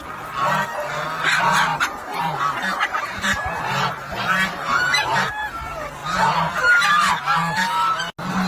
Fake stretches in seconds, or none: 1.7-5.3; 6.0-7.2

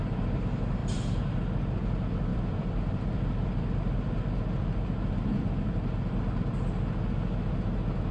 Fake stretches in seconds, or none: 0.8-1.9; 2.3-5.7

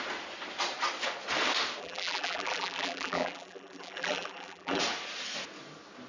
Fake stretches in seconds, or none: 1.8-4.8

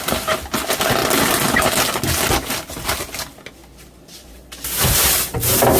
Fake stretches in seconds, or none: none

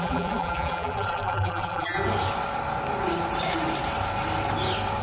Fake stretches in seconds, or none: 0.0-2.0

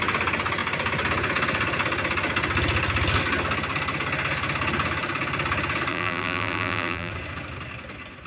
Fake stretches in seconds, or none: 5.9-7.1